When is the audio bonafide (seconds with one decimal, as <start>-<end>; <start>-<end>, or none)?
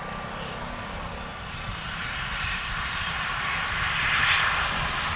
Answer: 0.0-1.3; 3.4-5.2